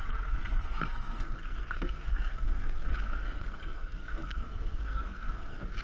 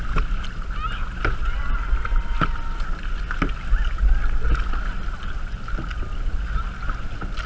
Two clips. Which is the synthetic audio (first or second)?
first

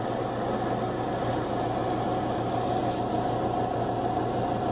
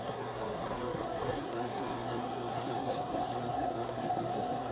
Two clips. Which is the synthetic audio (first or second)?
second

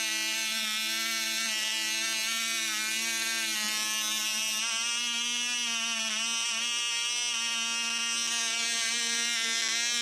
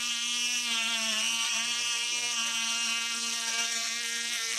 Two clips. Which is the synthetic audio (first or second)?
second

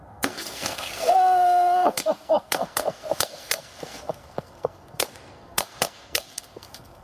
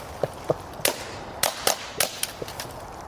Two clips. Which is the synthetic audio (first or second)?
first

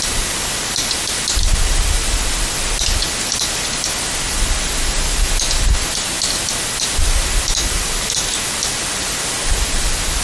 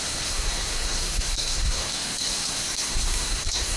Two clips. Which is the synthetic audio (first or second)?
second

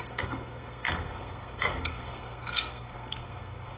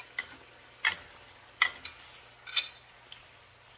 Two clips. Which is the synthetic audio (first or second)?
first